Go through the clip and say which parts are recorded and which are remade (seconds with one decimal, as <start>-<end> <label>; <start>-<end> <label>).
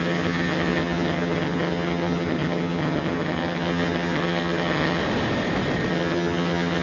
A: 0.0-5.0 remade; 5.0-5.9 recorded; 5.9-6.8 remade